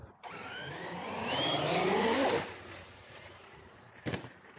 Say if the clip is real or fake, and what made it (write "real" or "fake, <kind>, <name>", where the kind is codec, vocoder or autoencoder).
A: fake, vocoder, BigVGAN v2